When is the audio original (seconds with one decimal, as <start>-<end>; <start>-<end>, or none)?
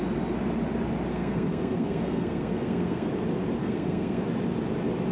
0.0-1.1; 3.1-3.6; 4.2-5.1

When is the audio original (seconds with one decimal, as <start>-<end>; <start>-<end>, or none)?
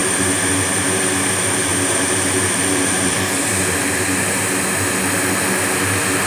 0.0-1.7; 4.2-6.3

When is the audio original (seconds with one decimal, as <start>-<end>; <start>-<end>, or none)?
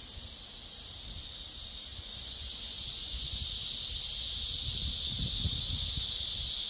0.0-1.9; 3.4-6.7